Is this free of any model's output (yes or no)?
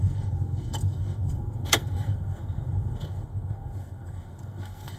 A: no